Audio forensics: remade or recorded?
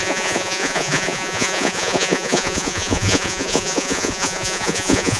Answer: remade